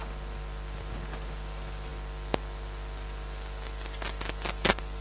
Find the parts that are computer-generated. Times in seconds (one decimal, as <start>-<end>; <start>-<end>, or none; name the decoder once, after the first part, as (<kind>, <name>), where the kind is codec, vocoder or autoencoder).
none